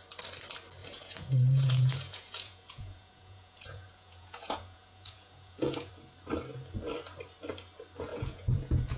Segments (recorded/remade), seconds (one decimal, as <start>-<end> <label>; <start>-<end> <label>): 0.0-0.8 recorded; 0.8-5.9 remade; 5.9-8.1 recorded; 8.1-9.0 remade